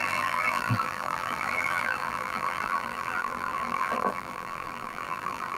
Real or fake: fake